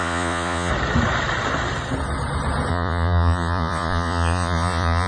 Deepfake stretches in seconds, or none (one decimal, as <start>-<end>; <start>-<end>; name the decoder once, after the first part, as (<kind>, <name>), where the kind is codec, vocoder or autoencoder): 0.0-0.7 (vocoder, Vocos); 2.7-5.1